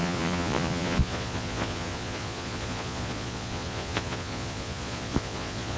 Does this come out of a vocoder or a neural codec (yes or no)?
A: yes